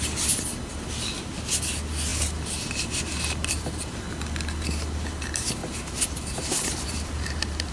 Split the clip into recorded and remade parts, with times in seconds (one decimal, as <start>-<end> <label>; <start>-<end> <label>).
0.0-5.6 recorded; 5.6-7.7 remade